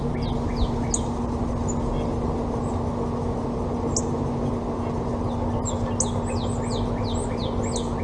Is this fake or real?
real